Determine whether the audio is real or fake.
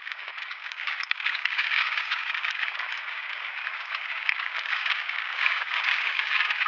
fake